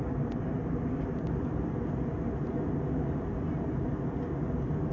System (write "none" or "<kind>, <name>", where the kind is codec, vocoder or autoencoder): none